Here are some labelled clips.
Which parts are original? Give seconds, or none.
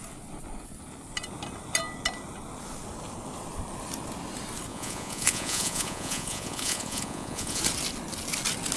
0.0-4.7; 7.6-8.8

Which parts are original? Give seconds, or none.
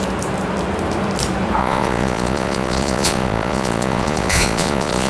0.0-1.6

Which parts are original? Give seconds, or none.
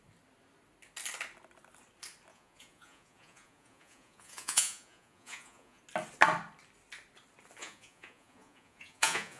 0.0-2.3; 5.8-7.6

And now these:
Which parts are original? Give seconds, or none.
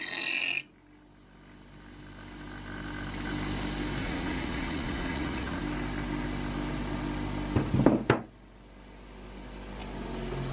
0.0-4.0; 5.6-10.5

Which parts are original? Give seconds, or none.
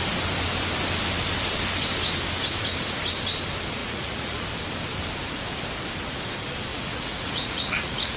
0.0-3.8; 4.5-6.7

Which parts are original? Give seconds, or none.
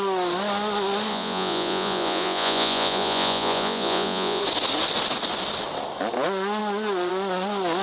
0.0-1.1; 4.4-7.8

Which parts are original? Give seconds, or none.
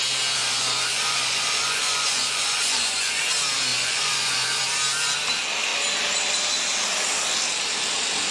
0.0-0.4; 3.2-3.7; 4.6-8.3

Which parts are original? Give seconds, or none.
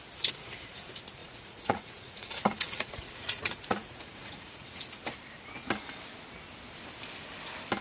0.0-1.2; 4.9-7.8